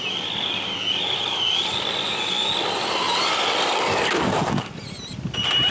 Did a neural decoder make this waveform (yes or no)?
no